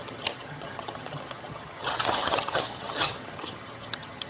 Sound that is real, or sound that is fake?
fake